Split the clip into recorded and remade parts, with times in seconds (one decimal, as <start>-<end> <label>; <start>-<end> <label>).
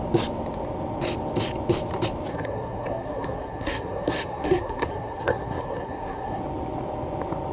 0.0-2.3 recorded; 2.3-6.4 remade; 6.4-7.5 recorded